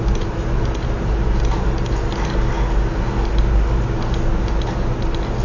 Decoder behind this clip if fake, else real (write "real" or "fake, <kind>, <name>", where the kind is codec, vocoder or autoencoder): real